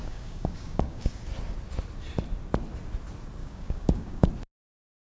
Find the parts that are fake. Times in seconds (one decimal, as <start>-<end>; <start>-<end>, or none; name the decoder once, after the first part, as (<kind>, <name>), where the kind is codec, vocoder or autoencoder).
0.0-1.1 (codec, DAC); 3.4-4.3